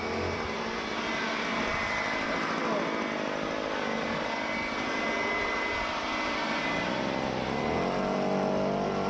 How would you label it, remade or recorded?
recorded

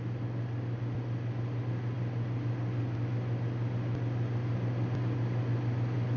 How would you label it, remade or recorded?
recorded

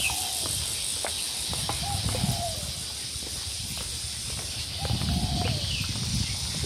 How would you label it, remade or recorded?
recorded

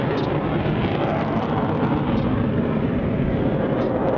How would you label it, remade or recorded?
recorded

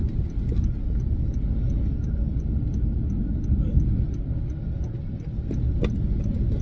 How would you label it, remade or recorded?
recorded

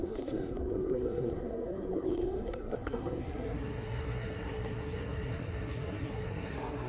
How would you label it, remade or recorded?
remade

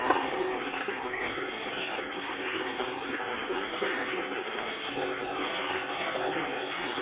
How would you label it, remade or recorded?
remade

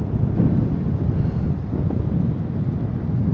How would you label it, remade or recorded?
recorded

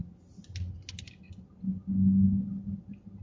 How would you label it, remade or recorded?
recorded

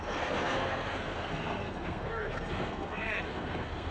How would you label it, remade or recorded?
remade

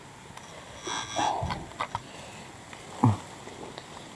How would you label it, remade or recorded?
recorded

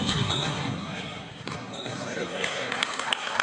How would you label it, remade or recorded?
remade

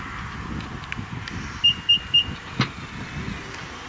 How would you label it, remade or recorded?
recorded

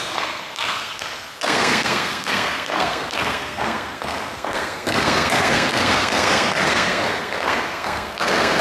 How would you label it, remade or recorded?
remade